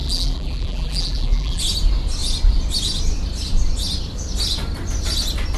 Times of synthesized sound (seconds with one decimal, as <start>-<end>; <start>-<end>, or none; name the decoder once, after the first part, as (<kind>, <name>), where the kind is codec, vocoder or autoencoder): 0.0-1.6 (vocoder, BigVGAN v2)